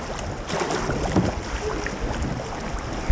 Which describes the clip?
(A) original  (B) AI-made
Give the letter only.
A